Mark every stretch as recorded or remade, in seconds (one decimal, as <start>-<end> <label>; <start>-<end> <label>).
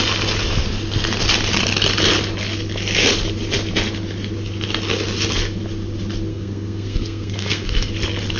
0.0-6.3 recorded; 6.3-7.9 remade; 7.9-8.4 recorded